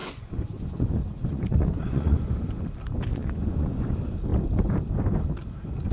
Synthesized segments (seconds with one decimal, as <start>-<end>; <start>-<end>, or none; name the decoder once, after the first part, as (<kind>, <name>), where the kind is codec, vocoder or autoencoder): 0.0-2.6 (vocoder, Vocos); 3.1-3.9